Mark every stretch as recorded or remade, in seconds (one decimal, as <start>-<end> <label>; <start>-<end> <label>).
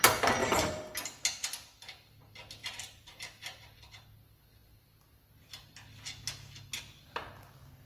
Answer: 0.0-0.4 recorded; 0.4-0.9 remade; 0.9-2.6 recorded; 2.6-3.8 remade; 3.8-7.9 recorded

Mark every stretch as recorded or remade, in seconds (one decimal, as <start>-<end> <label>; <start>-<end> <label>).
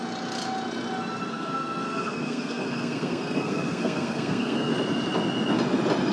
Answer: 0.0-1.3 recorded; 1.3-4.7 remade; 4.7-6.1 recorded